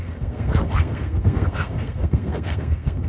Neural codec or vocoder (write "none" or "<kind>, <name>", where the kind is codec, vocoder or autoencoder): codec, SNAC